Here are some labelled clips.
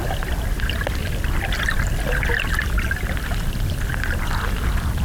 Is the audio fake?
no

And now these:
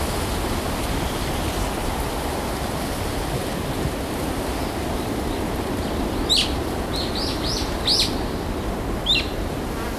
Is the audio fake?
yes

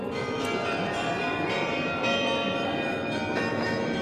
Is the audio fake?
yes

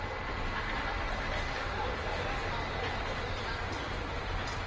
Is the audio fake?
no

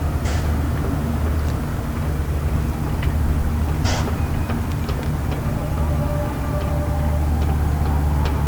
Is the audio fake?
no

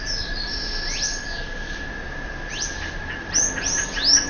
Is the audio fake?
yes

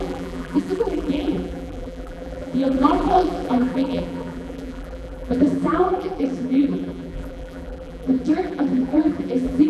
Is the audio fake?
yes